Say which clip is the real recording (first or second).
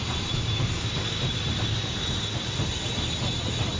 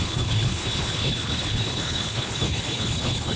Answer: first